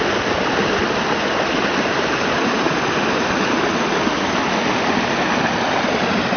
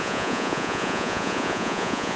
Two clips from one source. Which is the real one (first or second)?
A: first